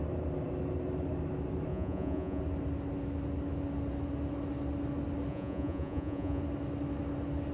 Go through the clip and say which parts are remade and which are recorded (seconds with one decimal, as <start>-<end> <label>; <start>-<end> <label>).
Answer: 0.0-1.7 recorded; 1.7-2.4 remade; 2.4-5.3 recorded; 5.3-6.4 remade; 6.4-7.5 recorded